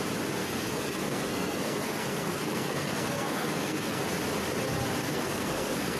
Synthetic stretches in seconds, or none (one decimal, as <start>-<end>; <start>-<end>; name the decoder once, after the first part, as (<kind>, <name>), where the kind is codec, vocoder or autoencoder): 0.4-4.0 (codec, SNAC); 5.0-6.0